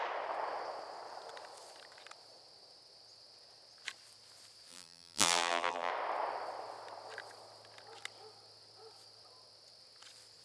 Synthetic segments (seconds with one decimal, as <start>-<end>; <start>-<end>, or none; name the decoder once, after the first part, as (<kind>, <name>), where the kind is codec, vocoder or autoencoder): 4.7-5.9 (vocoder, BigVGAN v2)